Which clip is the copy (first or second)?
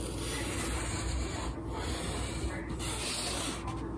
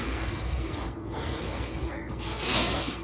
second